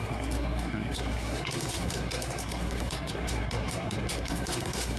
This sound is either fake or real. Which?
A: fake